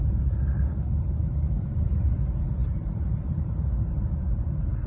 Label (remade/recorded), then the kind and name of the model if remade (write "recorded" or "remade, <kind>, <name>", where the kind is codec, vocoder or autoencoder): remade, vocoder, BigVGAN v2